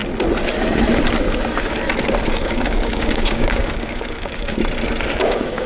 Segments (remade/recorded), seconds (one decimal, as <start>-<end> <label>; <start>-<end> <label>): 0.0-2.3 recorded; 2.3-4.6 remade; 4.6-5.2 recorded; 5.2-5.7 remade